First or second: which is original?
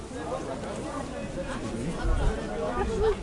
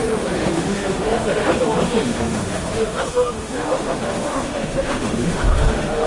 first